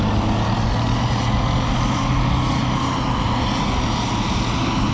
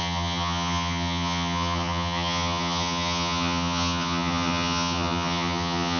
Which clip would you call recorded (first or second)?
first